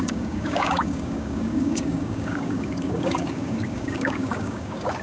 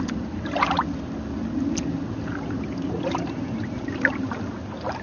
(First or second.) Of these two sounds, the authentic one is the second